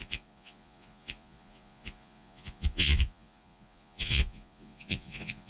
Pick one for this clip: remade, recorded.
remade